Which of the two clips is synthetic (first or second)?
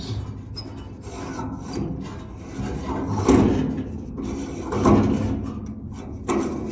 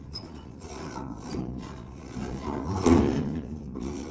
second